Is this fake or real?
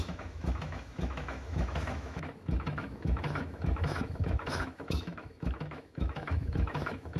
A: fake